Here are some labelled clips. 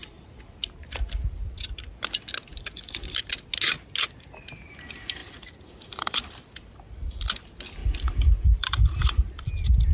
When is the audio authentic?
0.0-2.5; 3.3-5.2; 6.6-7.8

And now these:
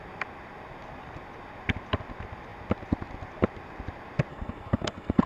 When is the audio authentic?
0.0-4.3

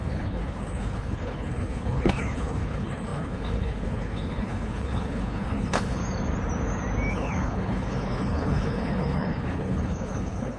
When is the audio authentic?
6.0-7.1

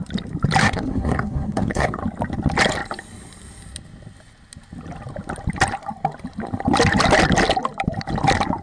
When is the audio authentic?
0.0-0.6; 2.0-8.6

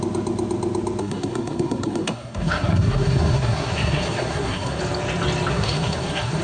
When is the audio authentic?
0.0-1.0; 4.8-5.5

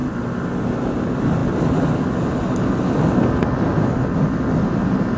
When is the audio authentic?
0.0-5.2

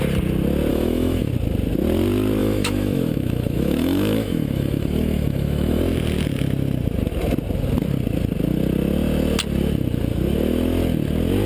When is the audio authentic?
0.0-0.7; 1.3-2.4; 5.8-11.5

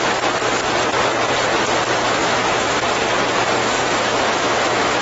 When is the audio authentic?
0.0-2.0; 2.8-3.6